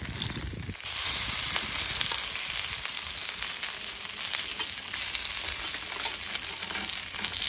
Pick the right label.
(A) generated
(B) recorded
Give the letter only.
B